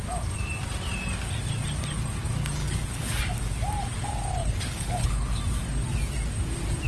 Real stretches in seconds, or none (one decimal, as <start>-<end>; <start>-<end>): 0.0-2.6; 3.2-4.4; 5.4-6.9